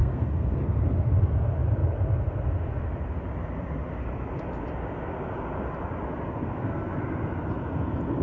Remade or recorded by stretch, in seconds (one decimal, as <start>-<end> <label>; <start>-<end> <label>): 0.0-0.8 remade; 0.8-6.4 recorded; 6.4-7.0 remade; 7.0-8.2 recorded